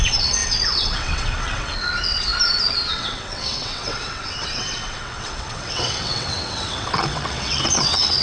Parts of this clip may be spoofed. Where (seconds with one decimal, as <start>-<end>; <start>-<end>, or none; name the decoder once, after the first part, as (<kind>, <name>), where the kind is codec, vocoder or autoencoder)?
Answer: 0.0-2.3 (vocoder, WaveNeXt); 2.9-8.2